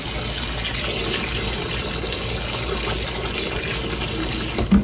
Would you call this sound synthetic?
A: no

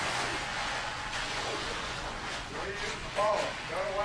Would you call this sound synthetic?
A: yes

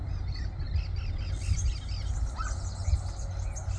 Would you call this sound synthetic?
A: no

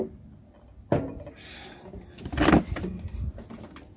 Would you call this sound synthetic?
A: no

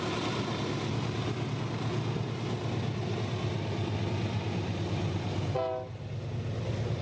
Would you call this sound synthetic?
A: no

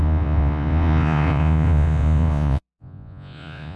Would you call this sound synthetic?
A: yes